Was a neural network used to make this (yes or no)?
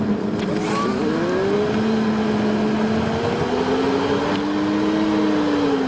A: no